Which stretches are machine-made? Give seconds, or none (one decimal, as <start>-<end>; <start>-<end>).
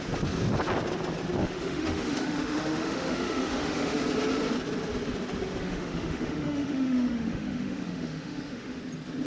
1.4-4.0; 5.6-8.8